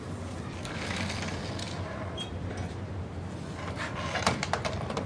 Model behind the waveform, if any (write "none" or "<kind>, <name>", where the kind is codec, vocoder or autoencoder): none